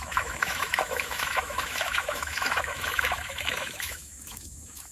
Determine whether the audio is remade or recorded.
remade